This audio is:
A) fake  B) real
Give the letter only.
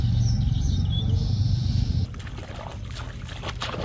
B